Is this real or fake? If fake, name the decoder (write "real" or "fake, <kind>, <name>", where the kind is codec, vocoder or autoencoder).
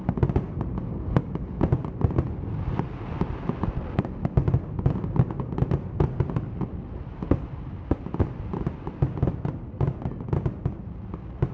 real